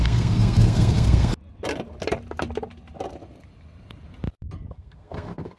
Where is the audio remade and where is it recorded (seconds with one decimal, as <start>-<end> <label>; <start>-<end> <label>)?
0.0-1.3 remade; 1.3-4.7 recorded; 4.7-5.6 remade